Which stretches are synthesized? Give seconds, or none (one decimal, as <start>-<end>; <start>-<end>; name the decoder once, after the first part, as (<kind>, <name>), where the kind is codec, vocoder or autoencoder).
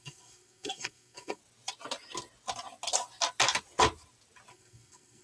0.0-1.4 (codec, SNAC); 4.5-5.2